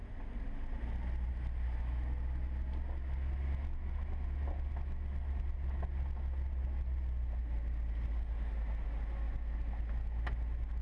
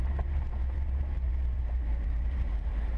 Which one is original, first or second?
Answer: first